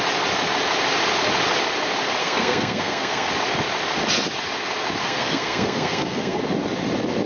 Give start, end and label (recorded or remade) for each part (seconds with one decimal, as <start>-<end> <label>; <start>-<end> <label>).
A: 0.0-2.2 recorded; 2.2-3.3 remade; 3.3-5.0 recorded; 5.0-6.4 remade; 6.4-7.3 recorded